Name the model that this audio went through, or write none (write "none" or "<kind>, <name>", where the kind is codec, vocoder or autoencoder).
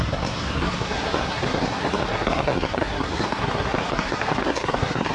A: codec, SNAC